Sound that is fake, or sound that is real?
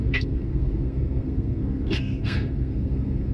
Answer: fake